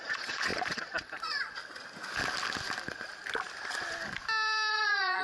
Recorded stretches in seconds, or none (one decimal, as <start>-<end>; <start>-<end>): 1.6-4.7